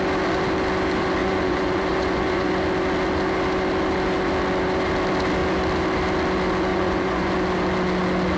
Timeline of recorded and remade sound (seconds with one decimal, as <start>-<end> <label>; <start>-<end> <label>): 0.0-1.2 recorded; 1.2-2.5 remade; 2.5-6.7 recorded; 6.7-7.3 remade; 7.3-8.4 recorded